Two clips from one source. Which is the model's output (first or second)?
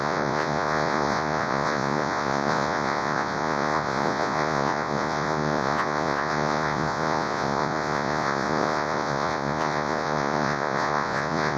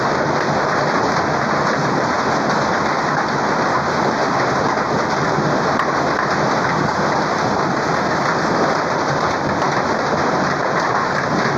first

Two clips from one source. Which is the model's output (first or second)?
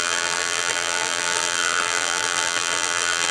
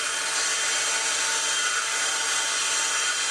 first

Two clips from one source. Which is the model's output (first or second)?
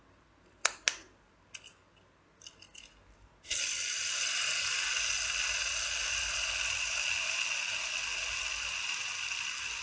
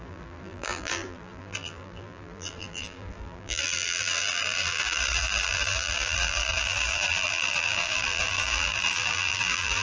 second